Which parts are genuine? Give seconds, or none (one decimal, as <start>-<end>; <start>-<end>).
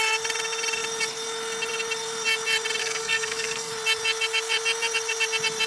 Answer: 0.0-2.8; 3.7-5.7